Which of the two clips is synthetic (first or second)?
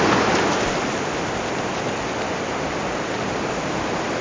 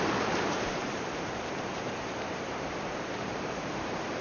second